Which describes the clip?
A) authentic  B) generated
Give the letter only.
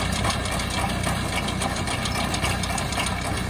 A